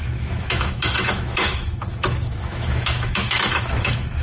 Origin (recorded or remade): remade